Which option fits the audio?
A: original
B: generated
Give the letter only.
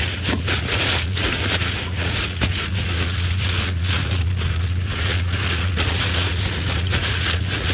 B